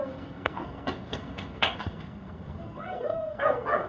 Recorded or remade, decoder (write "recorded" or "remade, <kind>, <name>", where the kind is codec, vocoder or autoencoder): remade, codec, SNAC